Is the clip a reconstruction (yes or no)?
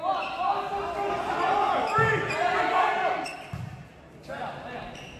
no